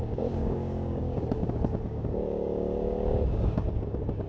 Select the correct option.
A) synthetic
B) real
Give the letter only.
A